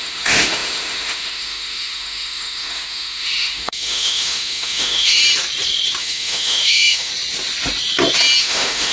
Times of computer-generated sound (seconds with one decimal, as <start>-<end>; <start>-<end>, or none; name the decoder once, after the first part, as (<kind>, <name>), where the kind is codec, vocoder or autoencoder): 0.0-5.2 (autoencoder, DAC-VAE); 6.0-7.1; 8.4-8.9